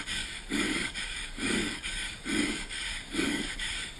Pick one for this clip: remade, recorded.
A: remade